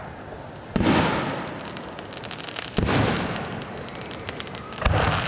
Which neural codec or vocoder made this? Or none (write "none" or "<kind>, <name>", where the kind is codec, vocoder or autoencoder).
none